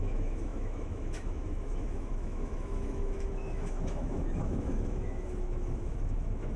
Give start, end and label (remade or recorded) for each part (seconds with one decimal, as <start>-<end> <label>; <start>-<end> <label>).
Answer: 0.0-6.6 remade